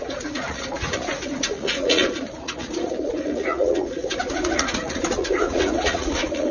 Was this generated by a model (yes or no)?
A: yes